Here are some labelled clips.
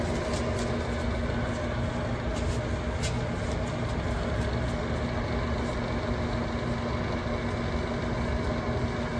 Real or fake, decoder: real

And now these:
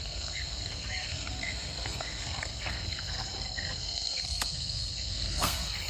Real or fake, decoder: fake, codec, SNAC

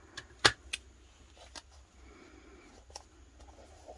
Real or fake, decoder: real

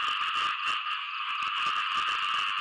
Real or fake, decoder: real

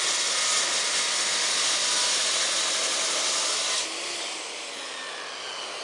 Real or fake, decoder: real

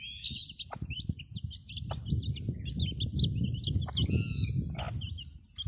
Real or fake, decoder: real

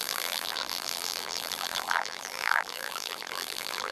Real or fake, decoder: fake, vocoder, BigVGAN v2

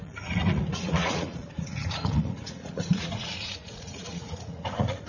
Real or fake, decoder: fake, vocoder, Vocos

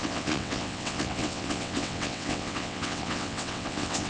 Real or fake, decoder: fake, vocoder, WaveNeXt